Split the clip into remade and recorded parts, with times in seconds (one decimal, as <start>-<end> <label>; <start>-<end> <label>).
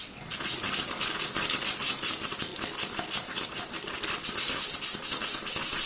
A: 0.0-5.9 recorded